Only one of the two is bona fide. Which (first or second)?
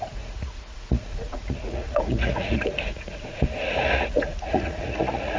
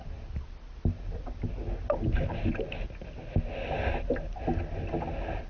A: second